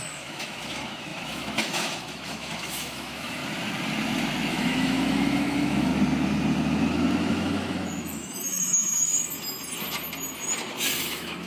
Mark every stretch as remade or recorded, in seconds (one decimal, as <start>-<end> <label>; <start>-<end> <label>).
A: 0.0-3.4 remade; 3.4-4.5 recorded; 4.5-5.9 remade; 5.9-7.3 recorded; 7.3-9.1 remade; 9.1-11.0 recorded; 11.0-11.5 remade